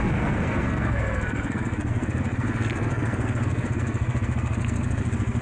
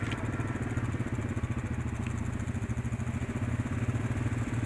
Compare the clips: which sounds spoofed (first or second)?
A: first